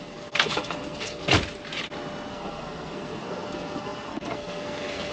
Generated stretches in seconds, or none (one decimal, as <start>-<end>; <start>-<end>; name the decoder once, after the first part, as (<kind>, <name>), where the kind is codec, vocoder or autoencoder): 0.0-1.2 (codec, SNAC); 2.3-5.1